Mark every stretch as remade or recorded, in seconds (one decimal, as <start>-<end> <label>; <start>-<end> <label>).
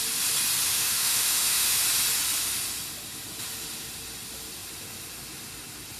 0.0-0.7 recorded; 0.7-1.8 remade; 1.8-6.0 recorded